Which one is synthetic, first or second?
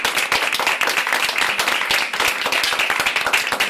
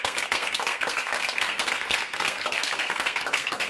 second